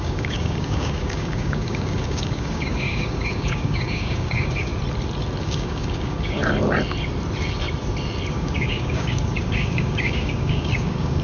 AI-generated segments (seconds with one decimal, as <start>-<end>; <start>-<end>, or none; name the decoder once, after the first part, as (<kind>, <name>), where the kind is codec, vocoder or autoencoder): 0.0-4.7 (codec, DAC); 5.4-6.4; 8.3-11.2